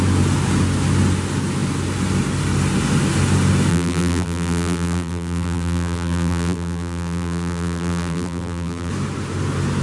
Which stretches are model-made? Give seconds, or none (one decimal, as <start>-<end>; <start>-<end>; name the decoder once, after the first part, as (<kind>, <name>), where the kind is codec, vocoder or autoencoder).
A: 3.7-8.9 (vocoder, BigVGAN v2)